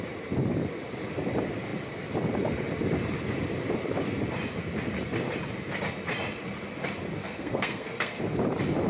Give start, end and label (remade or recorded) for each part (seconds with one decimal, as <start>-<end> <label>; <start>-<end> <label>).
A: 0.0-7.2 recorded; 7.2-8.2 remade; 8.2-8.9 recorded